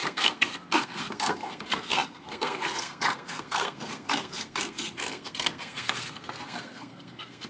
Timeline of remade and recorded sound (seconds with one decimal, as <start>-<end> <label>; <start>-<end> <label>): 0.0-7.5 remade